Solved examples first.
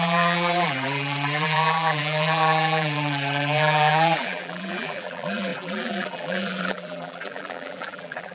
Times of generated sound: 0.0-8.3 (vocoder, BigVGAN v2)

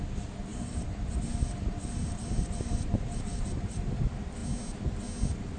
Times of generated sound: 0.5-3.9 (vocoder, BigVGAN v2)

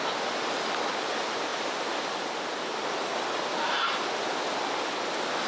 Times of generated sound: none

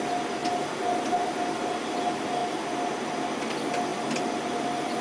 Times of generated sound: none

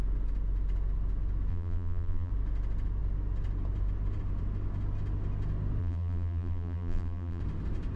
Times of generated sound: 1.5-2.3 (vocoder, BigVGAN v2); 5.8-7.4

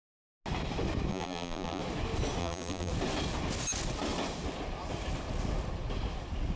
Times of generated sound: 1.1-1.8 (vocoder, BigVGAN v2); 2.4-2.9

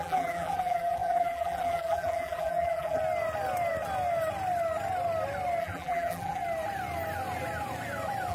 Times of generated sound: 0.0-3.0 (vocoder, BigVGAN v2); 5.6-6.4

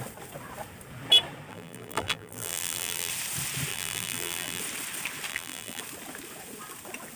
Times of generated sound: 1.5-3.1 (vocoder, BigVGAN v2); 3.7-4.6; 5.3-5.8